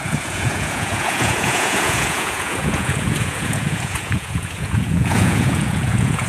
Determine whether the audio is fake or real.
fake